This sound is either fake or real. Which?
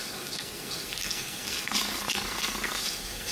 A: fake